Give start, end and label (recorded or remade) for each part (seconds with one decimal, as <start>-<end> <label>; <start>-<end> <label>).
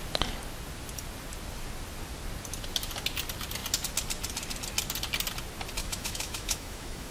0.0-5.8 recorded; 5.8-7.1 remade